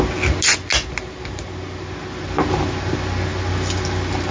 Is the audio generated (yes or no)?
no